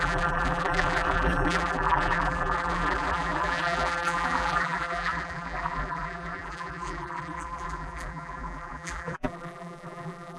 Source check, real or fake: fake